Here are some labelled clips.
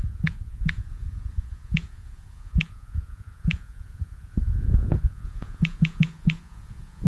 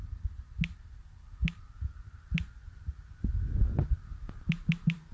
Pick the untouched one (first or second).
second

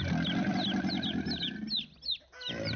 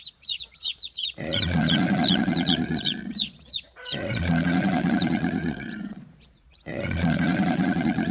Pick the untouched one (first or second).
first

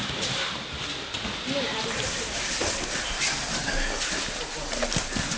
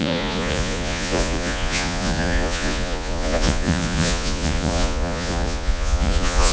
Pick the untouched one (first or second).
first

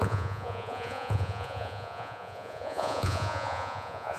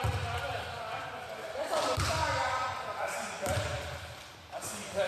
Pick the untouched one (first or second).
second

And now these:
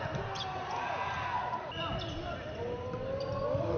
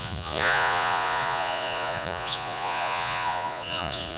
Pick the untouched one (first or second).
first